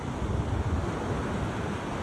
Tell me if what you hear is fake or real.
real